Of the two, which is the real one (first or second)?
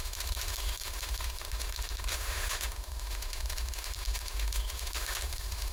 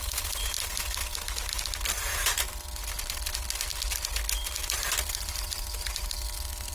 second